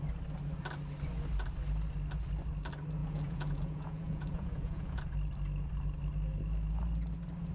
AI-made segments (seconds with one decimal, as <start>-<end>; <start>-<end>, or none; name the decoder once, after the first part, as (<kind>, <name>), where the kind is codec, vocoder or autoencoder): 3.0-5.0 (vocoder, Vocos)

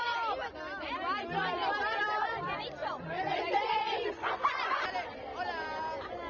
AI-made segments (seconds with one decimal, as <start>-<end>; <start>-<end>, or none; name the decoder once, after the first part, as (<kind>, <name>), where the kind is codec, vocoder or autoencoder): 2.8-4.9 (vocoder, Vocos)

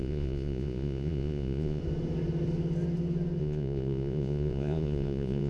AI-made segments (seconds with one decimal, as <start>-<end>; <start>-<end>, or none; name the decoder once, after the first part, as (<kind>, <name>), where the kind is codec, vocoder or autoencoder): 0.0-1.8 (vocoder, Vocos); 3.4-5.5

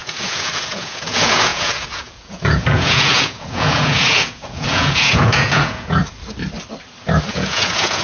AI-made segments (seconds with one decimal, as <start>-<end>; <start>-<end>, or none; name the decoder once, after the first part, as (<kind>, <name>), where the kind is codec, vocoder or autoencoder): 0.0-6.0 (vocoder, Vocos); 7.3-8.0

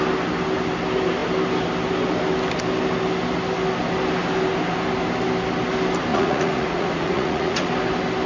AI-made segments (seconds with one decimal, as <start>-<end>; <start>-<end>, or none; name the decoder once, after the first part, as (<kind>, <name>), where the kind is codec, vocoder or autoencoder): 6.1-7.7 (vocoder, Vocos)

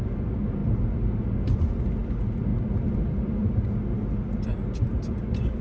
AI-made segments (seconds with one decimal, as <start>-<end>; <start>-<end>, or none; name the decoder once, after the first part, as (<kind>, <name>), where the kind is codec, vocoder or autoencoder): none

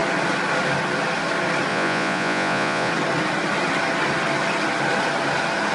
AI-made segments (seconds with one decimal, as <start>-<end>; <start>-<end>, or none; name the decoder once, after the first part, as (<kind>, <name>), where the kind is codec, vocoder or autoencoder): 1.7-2.9 (vocoder, Vocos)